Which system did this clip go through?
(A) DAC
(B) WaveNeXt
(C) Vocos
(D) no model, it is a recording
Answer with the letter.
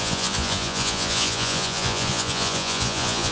C